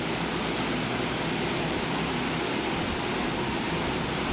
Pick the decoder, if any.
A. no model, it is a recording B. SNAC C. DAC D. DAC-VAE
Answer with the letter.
A